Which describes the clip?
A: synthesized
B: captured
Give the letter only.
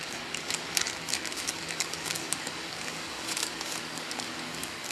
A